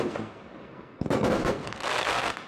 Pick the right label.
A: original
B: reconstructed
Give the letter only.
B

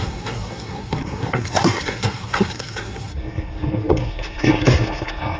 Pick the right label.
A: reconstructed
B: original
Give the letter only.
A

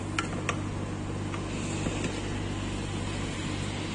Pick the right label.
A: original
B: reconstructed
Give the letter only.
A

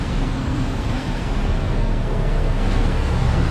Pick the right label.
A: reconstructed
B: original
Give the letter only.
A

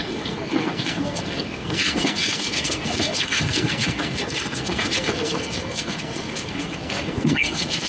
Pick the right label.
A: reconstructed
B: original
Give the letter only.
A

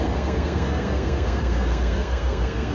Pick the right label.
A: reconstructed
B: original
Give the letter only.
A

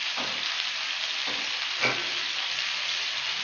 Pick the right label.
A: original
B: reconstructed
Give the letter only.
A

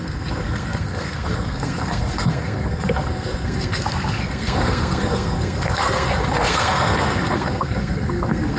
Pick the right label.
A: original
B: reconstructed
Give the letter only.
B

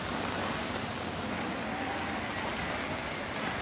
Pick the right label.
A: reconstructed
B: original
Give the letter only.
B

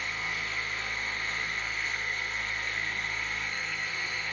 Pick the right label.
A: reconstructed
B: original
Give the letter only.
A